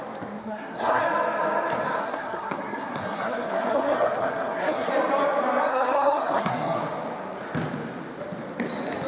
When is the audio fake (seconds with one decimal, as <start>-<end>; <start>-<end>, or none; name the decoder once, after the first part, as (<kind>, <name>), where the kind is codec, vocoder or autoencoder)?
0.4-1.0 (codec, SNAC); 2.0-4.9; 5.7-6.8